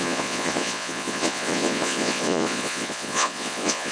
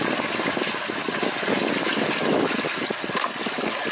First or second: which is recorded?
second